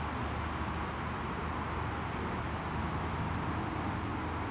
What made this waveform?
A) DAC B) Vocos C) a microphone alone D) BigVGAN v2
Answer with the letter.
C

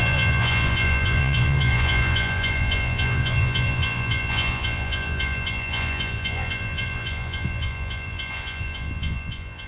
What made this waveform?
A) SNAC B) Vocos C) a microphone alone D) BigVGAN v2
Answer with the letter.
B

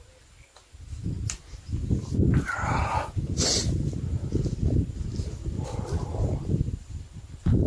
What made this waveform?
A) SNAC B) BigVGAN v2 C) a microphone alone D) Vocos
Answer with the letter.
C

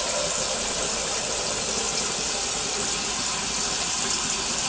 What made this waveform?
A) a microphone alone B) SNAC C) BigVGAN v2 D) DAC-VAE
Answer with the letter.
A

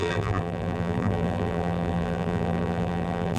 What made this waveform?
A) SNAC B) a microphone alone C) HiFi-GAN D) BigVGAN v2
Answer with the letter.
D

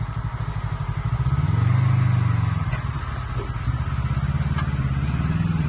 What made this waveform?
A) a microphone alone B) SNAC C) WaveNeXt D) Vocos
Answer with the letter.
A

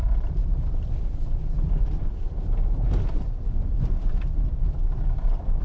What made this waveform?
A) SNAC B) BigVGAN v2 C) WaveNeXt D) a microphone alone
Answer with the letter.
D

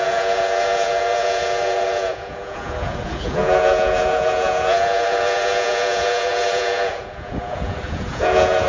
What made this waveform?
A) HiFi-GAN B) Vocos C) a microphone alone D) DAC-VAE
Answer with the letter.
B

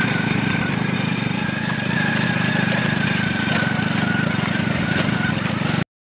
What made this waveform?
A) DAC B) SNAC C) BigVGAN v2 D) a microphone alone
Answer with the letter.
D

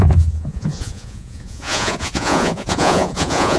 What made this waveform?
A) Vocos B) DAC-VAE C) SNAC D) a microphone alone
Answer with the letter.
A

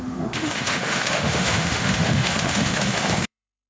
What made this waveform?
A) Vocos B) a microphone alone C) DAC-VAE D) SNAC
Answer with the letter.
C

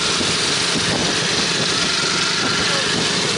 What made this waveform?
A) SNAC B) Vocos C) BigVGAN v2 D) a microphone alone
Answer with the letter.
D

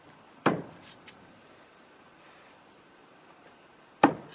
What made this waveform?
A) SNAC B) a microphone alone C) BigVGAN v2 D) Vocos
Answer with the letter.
B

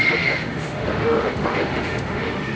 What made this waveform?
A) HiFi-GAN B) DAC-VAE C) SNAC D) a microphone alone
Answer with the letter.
B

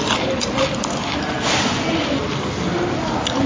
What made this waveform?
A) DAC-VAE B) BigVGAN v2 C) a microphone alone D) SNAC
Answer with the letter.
C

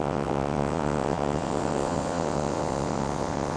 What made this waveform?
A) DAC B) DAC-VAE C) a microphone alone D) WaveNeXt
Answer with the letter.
D